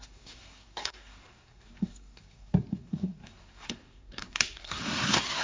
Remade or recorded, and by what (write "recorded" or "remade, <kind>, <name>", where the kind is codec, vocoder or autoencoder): remade, codec, SNAC